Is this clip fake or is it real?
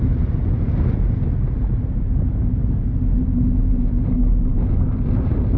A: real